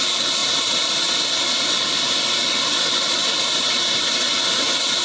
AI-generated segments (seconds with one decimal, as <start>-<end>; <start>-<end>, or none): 0.4-1.1; 3.2-4.1